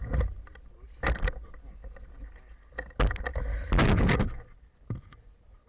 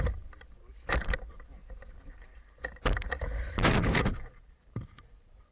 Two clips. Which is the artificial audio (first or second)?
second